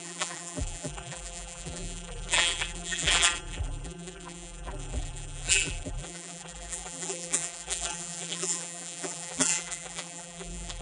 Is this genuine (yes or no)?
no